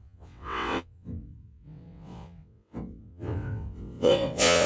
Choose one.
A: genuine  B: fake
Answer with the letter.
B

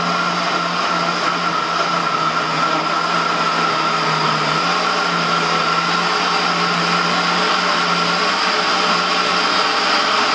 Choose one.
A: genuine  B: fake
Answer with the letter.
A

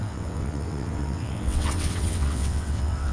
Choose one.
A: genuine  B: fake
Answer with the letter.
B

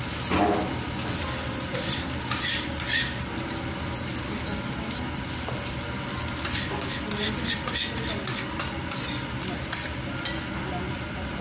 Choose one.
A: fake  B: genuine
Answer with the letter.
B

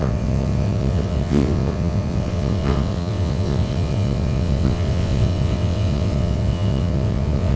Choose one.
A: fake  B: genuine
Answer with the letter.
A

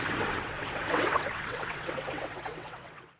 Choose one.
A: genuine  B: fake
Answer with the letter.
B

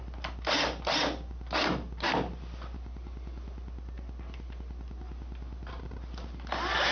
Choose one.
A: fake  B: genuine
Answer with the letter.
B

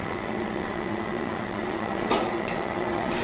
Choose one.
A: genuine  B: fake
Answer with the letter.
B